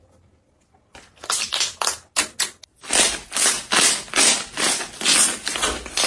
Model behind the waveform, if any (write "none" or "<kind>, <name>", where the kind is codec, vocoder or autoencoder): none